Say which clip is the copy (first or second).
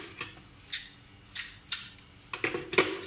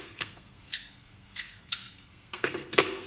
second